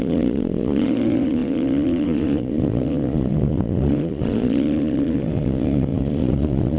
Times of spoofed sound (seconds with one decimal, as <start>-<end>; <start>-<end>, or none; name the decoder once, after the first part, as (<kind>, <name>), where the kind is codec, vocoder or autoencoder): 0.0-6.8 (vocoder, Vocos)